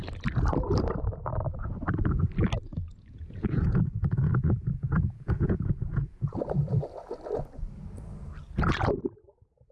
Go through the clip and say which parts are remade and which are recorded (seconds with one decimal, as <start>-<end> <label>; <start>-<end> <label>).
0.0-2.7 recorded; 2.7-6.4 remade; 6.4-9.7 recorded